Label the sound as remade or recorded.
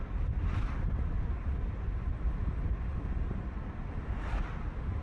recorded